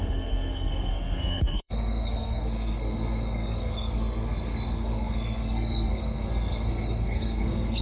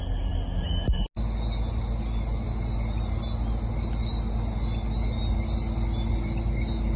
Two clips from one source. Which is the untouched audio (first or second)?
second